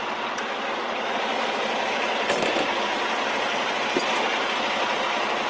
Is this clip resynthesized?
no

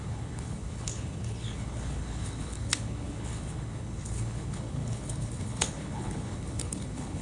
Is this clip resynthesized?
yes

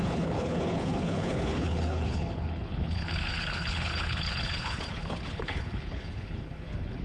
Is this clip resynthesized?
yes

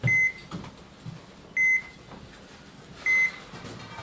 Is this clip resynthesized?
no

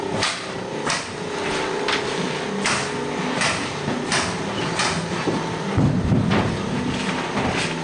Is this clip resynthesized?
no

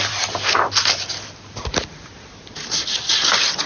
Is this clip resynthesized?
no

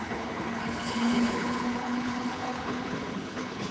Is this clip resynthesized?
yes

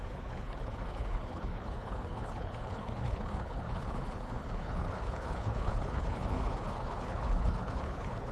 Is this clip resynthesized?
yes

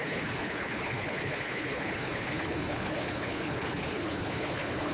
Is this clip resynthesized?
yes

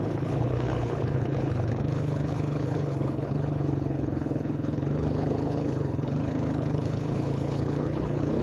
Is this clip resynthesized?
yes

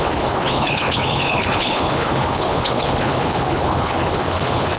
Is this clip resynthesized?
yes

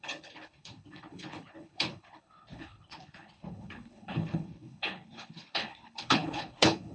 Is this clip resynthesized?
yes